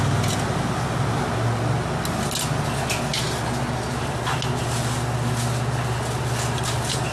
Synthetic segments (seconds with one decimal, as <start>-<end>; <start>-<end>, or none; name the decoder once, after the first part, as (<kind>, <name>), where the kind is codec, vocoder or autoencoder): none

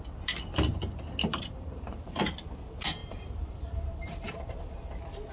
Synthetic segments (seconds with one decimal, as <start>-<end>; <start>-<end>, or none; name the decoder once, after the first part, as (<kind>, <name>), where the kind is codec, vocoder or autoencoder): 1.3-2.2 (vocoder, BigVGAN v2); 3.0-4.7

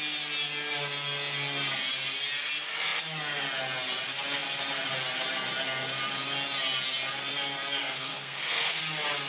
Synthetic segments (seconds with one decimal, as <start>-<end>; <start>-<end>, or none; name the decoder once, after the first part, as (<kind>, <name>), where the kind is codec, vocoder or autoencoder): 7.8-8.8 (codec, SNAC)